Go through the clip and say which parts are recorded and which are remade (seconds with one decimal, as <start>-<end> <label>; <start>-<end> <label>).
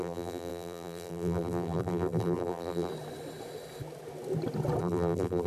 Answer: 0.0-2.9 remade; 2.9-4.8 recorded; 4.8-5.5 remade